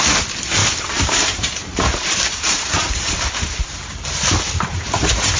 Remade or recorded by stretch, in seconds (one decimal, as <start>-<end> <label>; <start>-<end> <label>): 0.0-0.6 recorded; 0.6-3.8 remade; 3.8-5.4 recorded